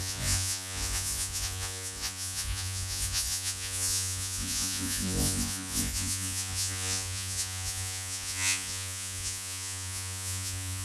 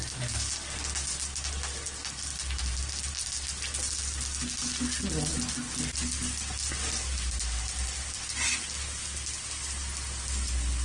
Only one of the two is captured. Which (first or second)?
second